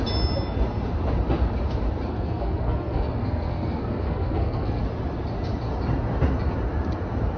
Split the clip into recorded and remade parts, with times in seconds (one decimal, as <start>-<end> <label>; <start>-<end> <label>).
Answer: 0.0-2.1 recorded; 2.1-4.8 remade; 4.8-7.4 recorded